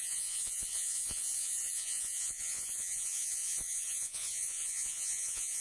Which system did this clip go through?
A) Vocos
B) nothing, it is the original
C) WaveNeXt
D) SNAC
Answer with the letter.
A